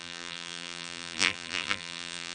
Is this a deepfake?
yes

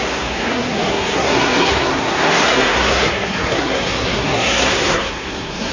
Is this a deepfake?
yes